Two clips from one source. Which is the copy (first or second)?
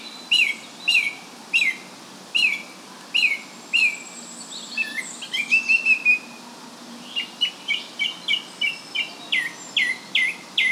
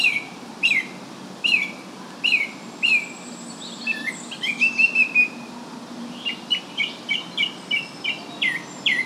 second